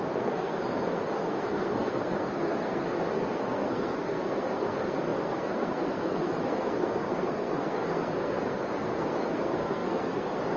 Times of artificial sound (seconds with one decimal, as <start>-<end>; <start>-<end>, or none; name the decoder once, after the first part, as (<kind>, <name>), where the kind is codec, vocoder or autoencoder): 0.0-10.6 (codec, SNAC)